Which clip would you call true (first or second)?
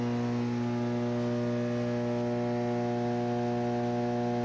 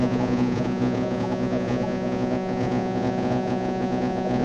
first